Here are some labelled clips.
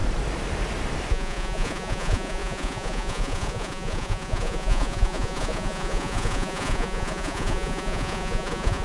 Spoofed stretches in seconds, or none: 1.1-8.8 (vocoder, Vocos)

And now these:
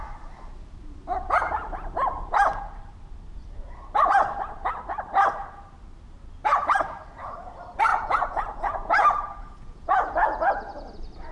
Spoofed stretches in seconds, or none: 7.9-10.9 (vocoder, Vocos)

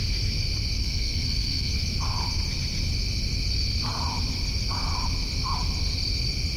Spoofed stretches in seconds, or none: 0.8-1.7 (codec, SNAC)

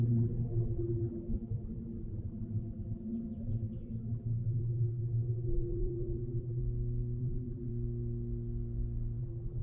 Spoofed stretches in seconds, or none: 0.0-6.6 (vocoder, BigVGAN v2); 7.2-7.7; 9.2-9.6

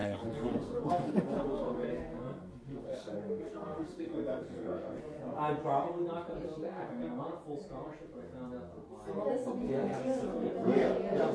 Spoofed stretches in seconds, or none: 0.0-5.0 (codec, SNAC); 6.6-7.2; 9.6-10.5

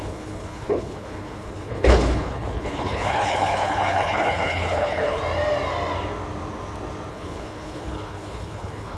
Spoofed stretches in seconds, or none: 0.0-5.2 (codec, HILCodec); 7.1-9.0

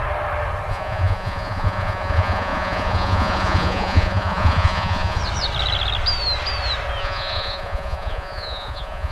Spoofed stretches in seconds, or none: 0.7-5.2 (vocoder, Vocos); 7.0-9.1